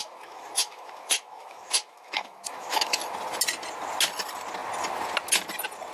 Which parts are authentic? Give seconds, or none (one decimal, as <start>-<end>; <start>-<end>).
3.0-5.9